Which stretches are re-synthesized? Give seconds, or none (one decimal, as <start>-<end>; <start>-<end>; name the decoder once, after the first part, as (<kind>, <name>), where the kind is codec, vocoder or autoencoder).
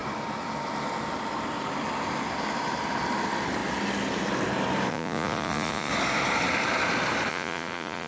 4.9-5.9 (vocoder, Vocos); 7.3-8.1